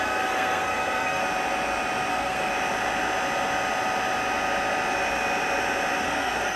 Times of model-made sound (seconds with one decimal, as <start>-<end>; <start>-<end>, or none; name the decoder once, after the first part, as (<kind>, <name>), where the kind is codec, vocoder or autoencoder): 0.0-1.2 (codec, SNAC); 2.1-2.5; 6.0-6.6